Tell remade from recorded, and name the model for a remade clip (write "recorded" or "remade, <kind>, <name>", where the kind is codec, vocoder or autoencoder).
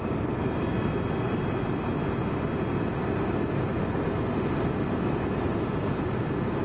recorded